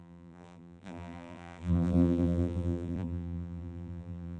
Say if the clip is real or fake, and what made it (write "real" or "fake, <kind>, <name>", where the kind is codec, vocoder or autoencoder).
fake, vocoder, BigVGAN v2